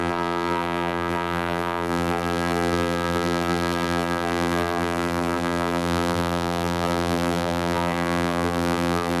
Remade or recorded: remade